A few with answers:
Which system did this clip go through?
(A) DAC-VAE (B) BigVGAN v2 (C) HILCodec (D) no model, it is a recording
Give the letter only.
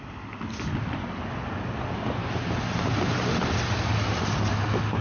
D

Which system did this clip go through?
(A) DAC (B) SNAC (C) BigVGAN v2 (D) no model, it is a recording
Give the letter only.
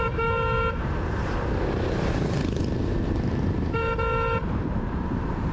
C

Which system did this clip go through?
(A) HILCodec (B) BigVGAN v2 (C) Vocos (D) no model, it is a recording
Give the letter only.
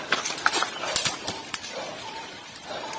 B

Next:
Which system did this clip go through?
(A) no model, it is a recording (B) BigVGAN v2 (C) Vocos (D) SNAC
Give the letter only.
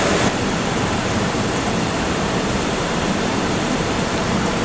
B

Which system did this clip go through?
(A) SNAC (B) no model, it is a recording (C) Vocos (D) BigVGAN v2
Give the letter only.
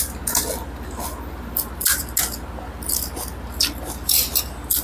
B